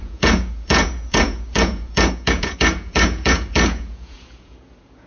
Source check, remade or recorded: remade